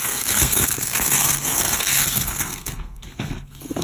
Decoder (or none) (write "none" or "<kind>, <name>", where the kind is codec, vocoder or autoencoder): codec, SNAC